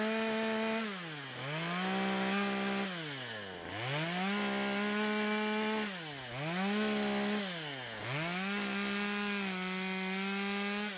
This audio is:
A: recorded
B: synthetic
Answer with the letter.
A